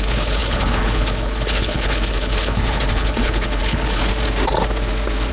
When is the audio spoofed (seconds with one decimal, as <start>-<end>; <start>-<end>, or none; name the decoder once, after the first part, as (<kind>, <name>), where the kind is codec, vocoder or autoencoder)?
0.0-4.0 (codec, HILCodec)